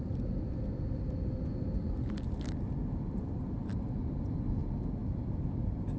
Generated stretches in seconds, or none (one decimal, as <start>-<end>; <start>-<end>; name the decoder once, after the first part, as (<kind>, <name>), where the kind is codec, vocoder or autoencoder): none